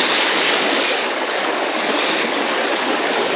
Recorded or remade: remade